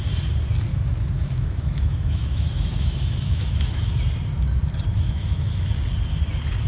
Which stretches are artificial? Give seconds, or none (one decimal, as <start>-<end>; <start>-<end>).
0.7-3.9; 4.9-5.7